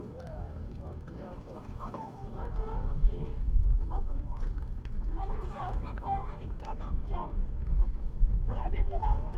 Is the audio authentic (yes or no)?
no